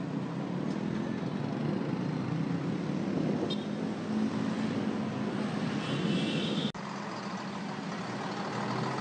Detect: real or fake real